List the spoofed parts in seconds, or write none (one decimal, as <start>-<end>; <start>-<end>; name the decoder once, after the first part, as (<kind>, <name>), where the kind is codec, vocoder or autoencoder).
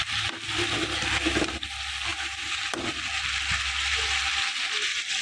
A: none